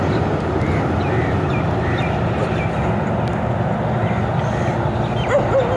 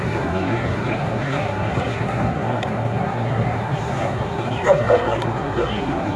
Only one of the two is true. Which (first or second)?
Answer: first